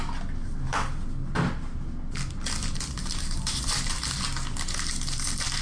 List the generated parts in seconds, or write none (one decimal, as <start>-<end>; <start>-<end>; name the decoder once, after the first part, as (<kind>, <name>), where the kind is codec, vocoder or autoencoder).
2.6-4.2 (vocoder, BigVGAN v2)